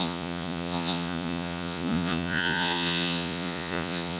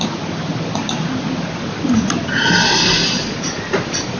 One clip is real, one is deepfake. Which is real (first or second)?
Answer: second